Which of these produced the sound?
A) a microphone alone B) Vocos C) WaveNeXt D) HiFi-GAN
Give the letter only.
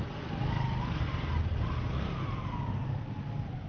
A